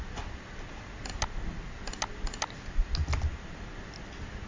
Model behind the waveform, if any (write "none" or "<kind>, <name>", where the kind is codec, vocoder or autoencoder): none